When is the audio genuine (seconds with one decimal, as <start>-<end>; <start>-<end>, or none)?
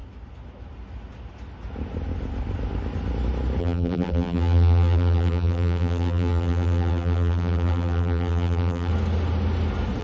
0.0-3.6; 8.9-10.0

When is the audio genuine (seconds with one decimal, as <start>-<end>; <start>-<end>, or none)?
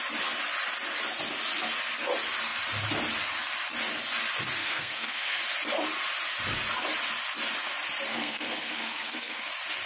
0.0-4.6; 5.4-8.1; 9.4-9.9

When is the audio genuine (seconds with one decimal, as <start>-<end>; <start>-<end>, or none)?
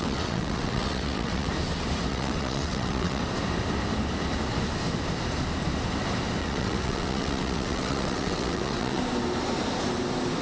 1.5-2.1; 3.2-6.4; 9.0-10.4